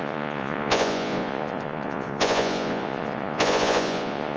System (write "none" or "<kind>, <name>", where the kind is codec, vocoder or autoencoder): vocoder, Vocos